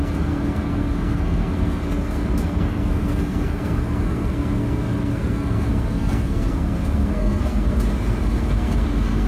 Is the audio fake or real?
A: fake